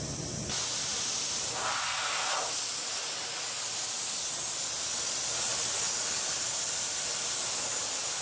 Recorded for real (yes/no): yes